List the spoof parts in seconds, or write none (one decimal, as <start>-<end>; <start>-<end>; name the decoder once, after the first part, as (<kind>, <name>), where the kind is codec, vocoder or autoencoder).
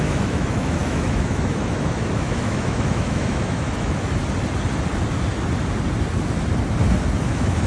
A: 0.0-4.2 (autoencoder, DAC-VAE); 7.2-7.7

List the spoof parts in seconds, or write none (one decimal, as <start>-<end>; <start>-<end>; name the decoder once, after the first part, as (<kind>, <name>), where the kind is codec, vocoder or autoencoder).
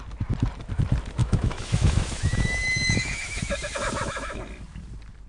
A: 1.2-4.4 (autoencoder, DAC-VAE)